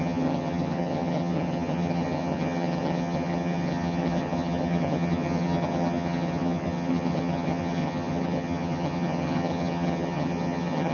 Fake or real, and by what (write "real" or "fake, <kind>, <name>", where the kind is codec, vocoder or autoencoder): fake, vocoder, HiFi-GAN